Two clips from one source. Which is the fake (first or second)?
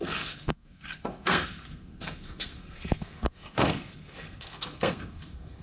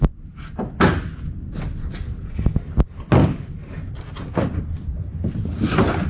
first